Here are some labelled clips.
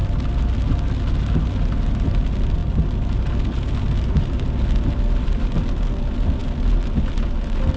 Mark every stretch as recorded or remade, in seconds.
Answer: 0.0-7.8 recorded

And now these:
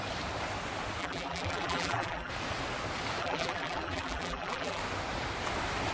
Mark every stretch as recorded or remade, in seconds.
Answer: 0.0-1.0 recorded; 1.0-2.3 remade; 2.3-3.2 recorded; 3.2-4.8 remade; 4.8-5.9 recorded

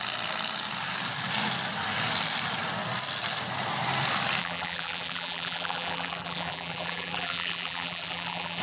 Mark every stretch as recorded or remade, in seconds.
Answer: 0.0-4.4 recorded; 4.4-8.6 remade

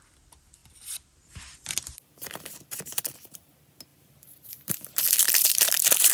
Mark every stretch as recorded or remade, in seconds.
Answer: 0.0-0.6 recorded; 0.6-2.4 remade; 2.4-3.0 recorded; 3.0-3.5 remade; 3.5-3.9 recorded; 3.9-6.1 remade

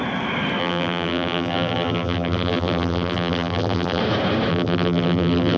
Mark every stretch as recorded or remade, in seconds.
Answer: 0.0-0.6 recorded; 0.6-4.0 remade; 4.0-4.5 recorded; 4.5-5.6 remade

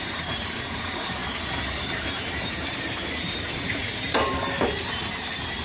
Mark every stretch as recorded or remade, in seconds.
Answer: 0.0-1.2 remade; 1.2-1.9 recorded; 1.9-5.6 remade